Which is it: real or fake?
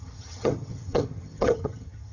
fake